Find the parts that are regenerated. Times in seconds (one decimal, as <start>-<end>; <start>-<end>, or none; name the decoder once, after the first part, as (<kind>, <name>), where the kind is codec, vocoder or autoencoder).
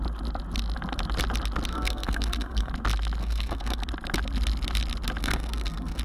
1.7-2.7 (codec, SNAC); 3.2-3.8; 5.2-6.0